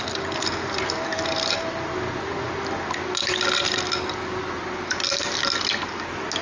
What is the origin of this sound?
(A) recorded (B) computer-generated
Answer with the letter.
A